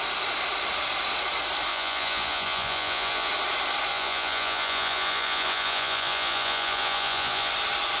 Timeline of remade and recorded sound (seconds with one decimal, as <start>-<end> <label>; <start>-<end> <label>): 0.0-1.7 recorded; 1.7-3.3 remade; 3.3-3.9 recorded; 3.9-7.5 remade; 7.5-8.0 recorded